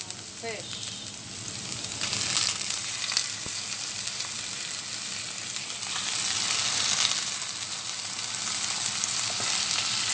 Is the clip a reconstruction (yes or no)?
no